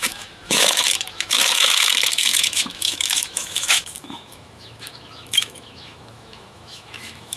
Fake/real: fake